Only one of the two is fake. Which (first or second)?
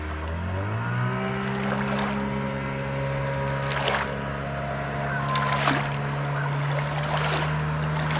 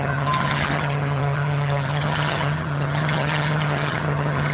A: second